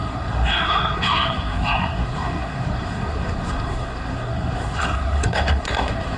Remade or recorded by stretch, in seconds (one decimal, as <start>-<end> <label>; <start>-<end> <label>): 0.0-6.2 remade